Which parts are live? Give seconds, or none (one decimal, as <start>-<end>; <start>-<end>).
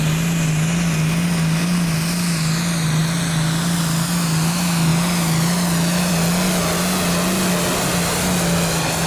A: 0.0-9.1